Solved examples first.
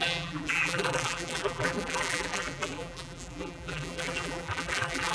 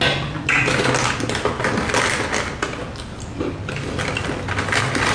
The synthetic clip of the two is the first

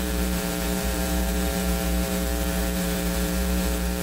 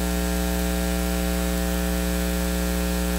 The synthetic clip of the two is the first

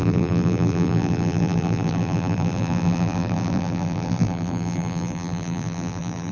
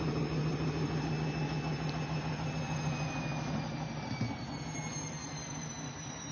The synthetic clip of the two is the first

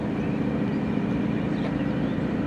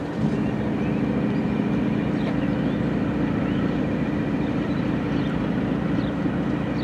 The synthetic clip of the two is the first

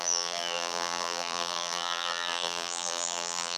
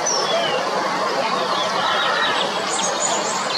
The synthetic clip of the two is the first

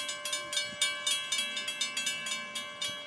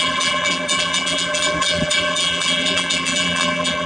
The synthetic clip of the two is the second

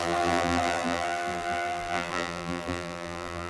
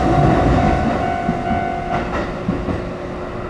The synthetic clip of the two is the first